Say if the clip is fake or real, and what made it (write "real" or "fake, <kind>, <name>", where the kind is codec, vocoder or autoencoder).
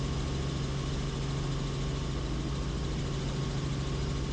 real